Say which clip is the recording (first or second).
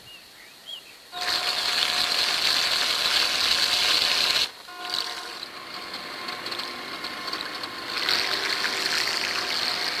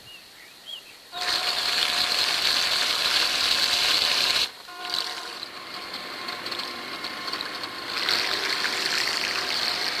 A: first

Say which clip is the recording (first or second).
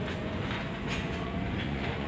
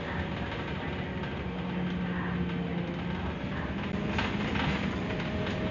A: second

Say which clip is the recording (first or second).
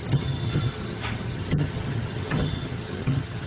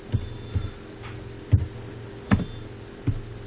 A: second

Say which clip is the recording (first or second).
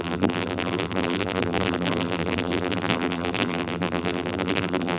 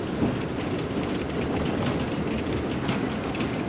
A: second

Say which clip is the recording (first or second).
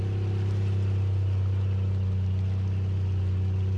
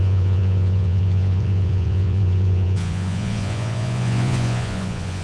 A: first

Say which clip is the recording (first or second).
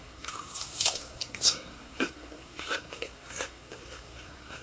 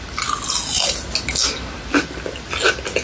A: second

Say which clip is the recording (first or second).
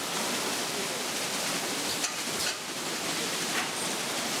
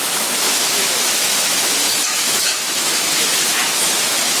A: first